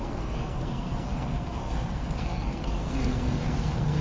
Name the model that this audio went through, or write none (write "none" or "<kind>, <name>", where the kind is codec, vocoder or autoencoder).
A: codec, SNAC